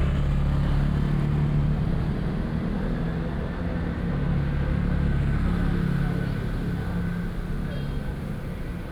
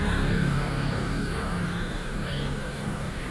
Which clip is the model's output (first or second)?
second